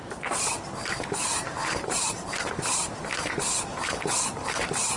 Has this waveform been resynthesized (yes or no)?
yes